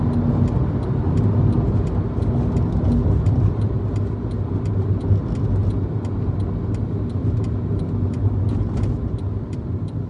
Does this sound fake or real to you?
real